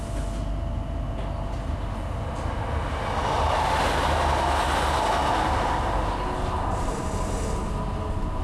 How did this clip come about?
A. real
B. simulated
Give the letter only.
A